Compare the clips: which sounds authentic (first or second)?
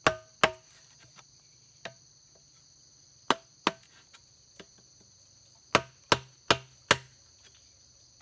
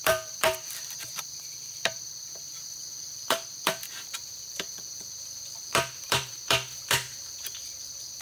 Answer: first